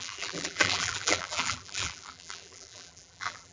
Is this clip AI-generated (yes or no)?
yes